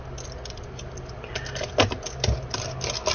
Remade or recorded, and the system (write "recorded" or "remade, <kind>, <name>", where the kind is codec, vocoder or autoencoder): recorded